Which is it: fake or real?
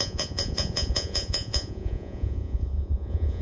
fake